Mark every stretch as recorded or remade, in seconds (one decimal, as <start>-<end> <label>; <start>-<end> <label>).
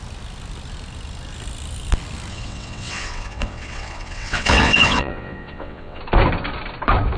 0.0-2.3 recorded; 2.3-6.0 remade; 6.0-7.2 recorded